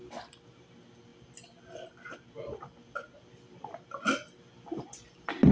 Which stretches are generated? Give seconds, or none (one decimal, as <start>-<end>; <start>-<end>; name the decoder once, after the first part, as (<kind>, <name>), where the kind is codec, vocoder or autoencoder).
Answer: none